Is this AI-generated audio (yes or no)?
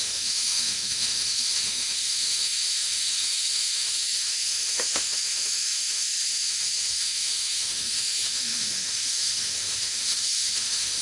yes